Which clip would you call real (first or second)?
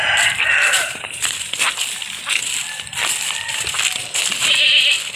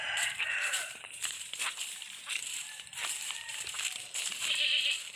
first